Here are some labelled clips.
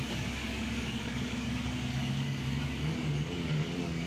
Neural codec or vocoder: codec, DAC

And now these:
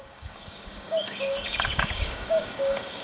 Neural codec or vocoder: codec, DAC